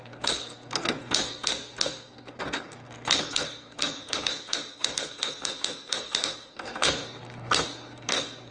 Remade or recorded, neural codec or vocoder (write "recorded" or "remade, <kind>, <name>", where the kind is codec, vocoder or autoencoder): remade, codec, SNAC